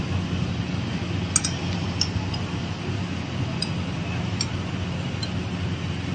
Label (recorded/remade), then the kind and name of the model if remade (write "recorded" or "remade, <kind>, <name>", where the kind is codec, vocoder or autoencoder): recorded